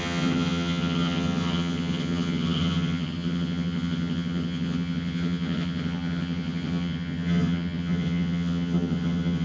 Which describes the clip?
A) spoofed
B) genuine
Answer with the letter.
A